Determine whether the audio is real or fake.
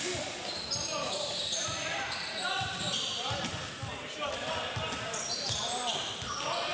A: real